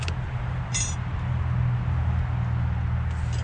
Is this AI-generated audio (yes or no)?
no